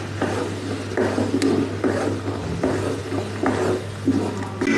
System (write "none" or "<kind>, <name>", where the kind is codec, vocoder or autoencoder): none